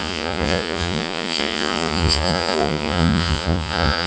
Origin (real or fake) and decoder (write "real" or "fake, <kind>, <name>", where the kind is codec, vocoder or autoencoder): fake, vocoder, Vocos